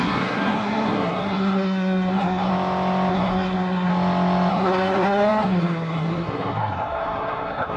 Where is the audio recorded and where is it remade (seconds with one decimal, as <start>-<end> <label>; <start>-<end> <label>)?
0.0-2.5 remade; 2.5-3.1 recorded; 3.1-3.9 remade; 3.9-4.5 recorded; 4.5-7.8 remade